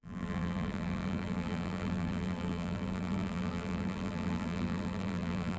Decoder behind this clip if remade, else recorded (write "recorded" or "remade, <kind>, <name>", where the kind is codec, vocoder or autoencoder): remade, vocoder, BigVGAN v2